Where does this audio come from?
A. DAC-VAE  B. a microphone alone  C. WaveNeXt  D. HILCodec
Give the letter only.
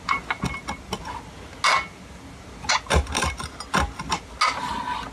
B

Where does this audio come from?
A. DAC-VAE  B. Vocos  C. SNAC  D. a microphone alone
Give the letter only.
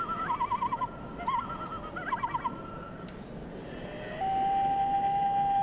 D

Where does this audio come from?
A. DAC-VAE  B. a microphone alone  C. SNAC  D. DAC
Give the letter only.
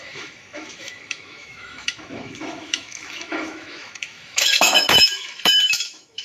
A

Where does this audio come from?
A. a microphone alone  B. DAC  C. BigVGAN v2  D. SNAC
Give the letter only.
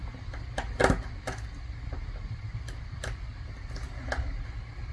A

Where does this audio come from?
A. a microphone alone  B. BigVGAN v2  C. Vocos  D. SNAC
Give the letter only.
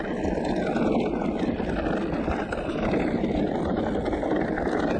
A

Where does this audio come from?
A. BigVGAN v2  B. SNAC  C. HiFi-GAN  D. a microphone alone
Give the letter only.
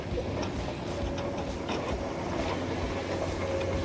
D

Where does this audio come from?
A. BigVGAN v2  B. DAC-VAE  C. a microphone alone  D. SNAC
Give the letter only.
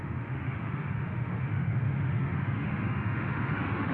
B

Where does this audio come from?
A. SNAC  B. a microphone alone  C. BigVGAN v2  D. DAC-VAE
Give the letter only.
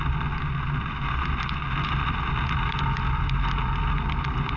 B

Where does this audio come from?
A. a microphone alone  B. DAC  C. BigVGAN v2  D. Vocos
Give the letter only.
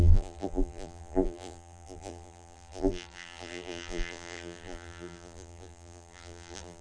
C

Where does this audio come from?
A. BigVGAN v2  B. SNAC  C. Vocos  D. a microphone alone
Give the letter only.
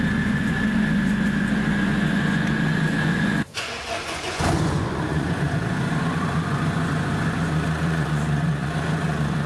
C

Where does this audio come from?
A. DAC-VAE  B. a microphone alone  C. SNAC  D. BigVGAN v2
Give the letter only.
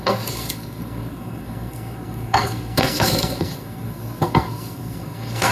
C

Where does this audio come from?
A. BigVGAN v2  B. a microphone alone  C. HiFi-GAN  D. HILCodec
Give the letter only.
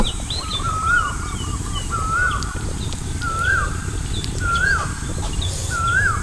A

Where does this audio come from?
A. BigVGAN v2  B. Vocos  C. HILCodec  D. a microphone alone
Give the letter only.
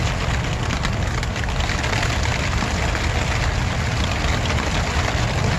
D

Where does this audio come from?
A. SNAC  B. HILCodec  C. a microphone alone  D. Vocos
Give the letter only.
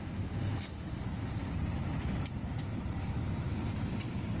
C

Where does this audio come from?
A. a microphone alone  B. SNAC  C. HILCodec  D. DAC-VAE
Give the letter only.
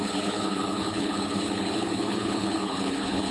C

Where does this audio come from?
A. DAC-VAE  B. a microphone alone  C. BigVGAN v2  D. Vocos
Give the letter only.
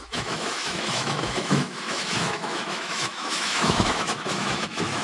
A